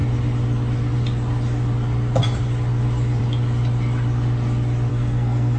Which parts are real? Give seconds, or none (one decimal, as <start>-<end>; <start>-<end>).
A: 0.0-4.9